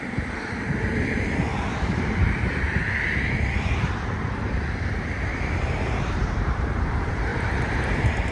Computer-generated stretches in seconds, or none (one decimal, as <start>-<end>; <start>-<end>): 0.0-2.8; 4.1-8.3